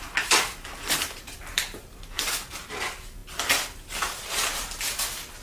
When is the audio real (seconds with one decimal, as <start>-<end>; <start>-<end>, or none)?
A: 0.0-1.0; 2.3-5.4